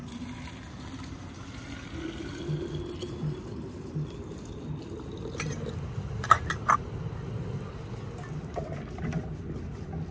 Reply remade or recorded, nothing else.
recorded